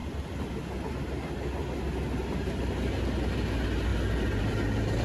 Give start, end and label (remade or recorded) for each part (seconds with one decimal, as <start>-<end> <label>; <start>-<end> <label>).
0.0-5.0 recorded